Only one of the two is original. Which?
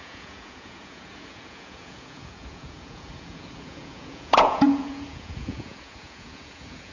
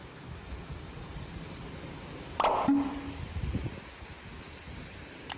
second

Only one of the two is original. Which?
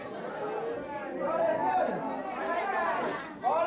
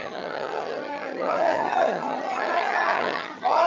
first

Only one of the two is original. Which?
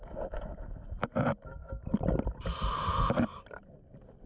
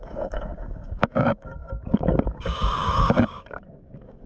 first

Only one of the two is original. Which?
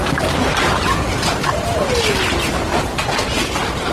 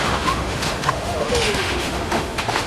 first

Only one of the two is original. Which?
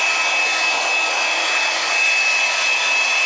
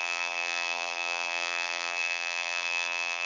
first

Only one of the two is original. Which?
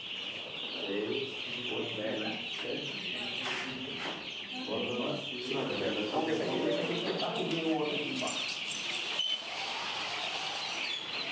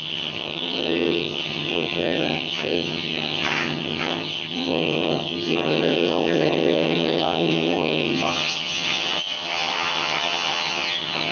first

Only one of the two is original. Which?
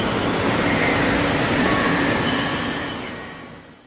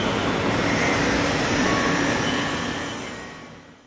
second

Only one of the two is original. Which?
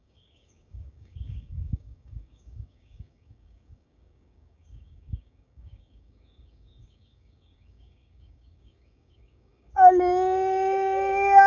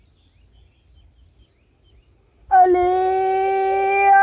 second